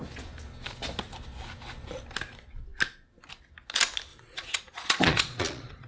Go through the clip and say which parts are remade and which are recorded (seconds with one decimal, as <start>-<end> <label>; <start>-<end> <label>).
0.0-4.1 recorded; 4.1-5.9 remade